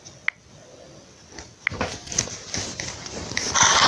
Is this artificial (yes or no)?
no